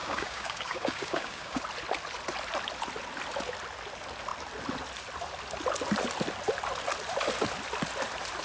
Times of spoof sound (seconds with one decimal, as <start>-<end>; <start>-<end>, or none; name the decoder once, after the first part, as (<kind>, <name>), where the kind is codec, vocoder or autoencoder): 0.0-1.6 (codec, DAC)